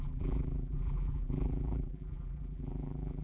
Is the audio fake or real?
fake